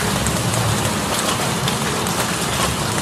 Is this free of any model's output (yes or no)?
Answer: yes